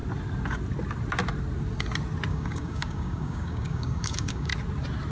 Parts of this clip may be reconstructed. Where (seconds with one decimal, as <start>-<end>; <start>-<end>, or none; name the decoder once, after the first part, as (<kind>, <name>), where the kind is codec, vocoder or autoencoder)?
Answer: 2.3-4.5 (codec, DAC)